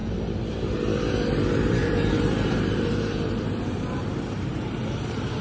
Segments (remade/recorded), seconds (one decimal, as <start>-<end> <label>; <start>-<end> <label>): 0.0-1.8 recorded; 1.8-4.7 remade; 4.7-5.4 recorded